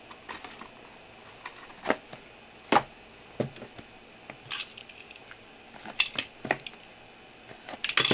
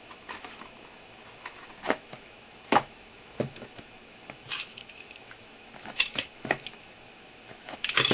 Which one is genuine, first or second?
first